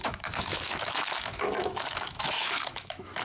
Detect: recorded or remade remade